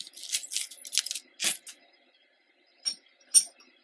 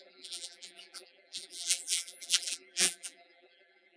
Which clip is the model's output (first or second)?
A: second